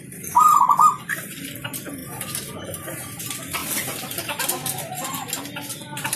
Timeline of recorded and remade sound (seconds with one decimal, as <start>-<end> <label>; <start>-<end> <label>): 0.0-6.2 recorded